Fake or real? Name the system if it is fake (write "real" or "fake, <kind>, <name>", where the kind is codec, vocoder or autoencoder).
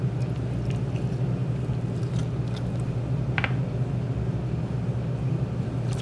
real